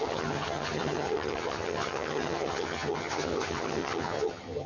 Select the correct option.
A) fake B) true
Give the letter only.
A